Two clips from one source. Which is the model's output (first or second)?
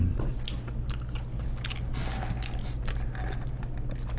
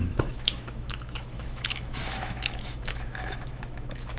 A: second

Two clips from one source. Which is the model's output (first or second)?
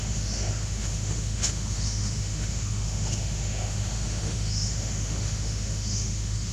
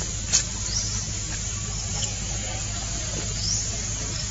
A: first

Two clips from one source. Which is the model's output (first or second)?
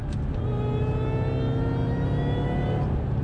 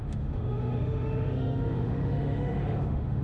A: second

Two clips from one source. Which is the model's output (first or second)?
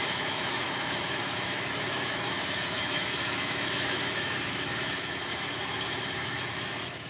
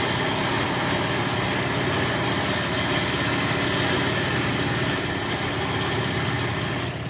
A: first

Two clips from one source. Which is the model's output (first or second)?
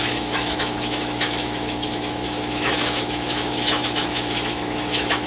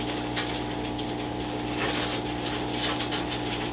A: first